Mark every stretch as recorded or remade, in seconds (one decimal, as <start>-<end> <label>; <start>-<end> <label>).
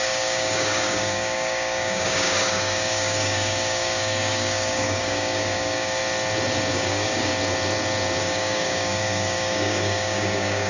0.0-6.0 remade; 6.0-6.7 recorded; 6.7-7.3 remade; 7.3-8.2 recorded; 8.2-10.7 remade